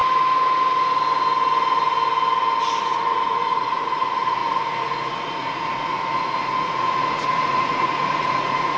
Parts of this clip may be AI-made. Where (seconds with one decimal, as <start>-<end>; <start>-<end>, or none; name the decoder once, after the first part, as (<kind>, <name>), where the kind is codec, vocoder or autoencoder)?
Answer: 2.8-8.8 (vocoder, Vocos)